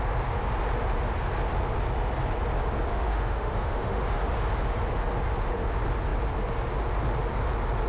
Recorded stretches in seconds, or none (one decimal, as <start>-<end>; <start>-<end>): 0.0-2.9; 4.3-7.9